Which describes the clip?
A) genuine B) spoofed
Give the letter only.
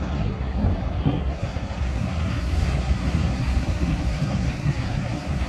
B